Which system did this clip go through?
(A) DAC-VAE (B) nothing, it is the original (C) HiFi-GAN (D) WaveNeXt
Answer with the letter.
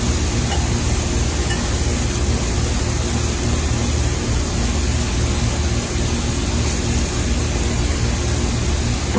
B